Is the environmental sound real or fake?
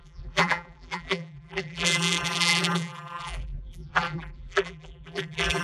fake